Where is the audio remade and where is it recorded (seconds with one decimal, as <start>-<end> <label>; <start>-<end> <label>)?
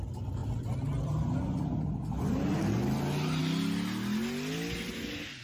0.0-5.4 recorded